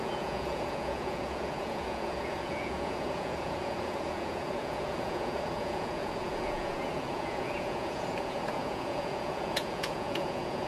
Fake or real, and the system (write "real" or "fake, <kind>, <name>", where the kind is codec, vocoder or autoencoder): fake, vocoder, Vocos